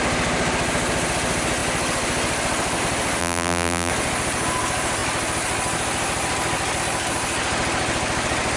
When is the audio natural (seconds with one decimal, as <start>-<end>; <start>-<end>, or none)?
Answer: 0.0-3.2; 3.9-8.6